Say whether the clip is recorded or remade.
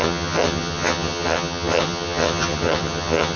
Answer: remade